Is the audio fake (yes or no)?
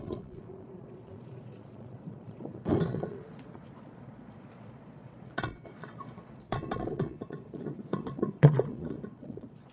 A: yes